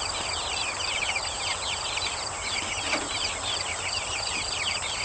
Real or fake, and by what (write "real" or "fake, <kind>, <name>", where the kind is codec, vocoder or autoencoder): fake, vocoder, BigVGAN v2